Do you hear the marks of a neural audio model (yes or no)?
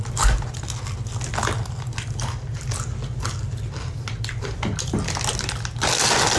no